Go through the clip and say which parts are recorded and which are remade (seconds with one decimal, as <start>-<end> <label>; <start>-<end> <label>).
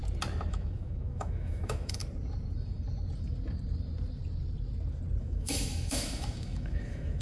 0.0-0.5 recorded; 0.5-2.0 remade; 2.0-5.2 recorded; 5.2-7.2 remade